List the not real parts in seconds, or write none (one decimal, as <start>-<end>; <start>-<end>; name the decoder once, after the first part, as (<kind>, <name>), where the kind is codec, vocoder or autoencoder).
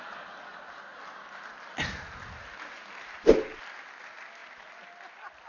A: none